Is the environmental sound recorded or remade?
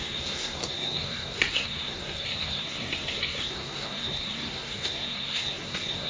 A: remade